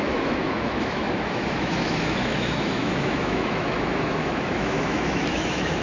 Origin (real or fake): fake